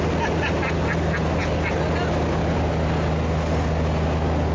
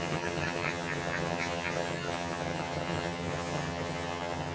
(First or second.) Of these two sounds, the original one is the first